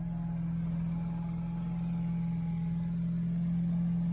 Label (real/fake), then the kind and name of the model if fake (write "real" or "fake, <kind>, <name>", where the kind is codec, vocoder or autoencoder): real